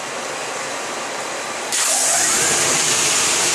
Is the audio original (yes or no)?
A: yes